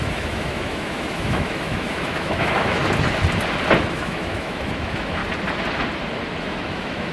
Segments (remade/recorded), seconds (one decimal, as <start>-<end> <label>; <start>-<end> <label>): 0.0-2.8 remade; 2.8-3.9 recorded; 3.9-5.2 remade; 5.2-6.4 recorded; 6.4-7.1 remade